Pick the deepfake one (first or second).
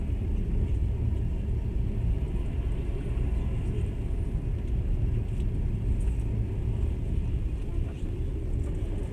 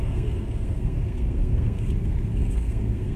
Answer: second